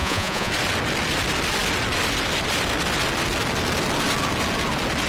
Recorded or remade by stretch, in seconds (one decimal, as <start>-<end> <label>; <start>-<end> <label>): 0.0-0.5 remade; 0.5-5.1 recorded